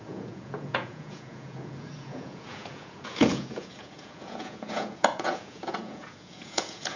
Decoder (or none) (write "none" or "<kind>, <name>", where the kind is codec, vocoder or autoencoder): vocoder, Vocos